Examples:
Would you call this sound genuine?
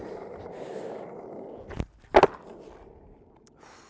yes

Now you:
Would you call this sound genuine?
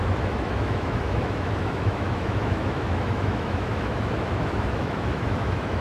no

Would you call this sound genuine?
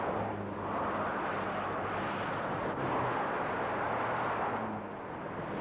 yes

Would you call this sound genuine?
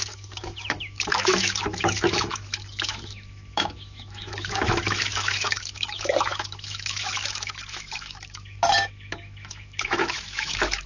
no